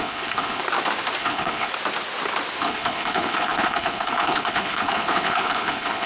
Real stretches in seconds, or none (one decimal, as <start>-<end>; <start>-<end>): 0.6-1.2; 1.7-2.6